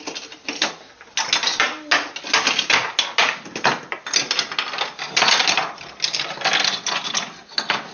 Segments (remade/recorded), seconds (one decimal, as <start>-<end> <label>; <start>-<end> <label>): 0.0-7.9 recorded